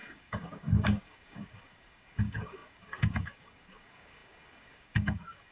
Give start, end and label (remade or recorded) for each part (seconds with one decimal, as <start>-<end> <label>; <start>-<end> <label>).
0.0-5.5 remade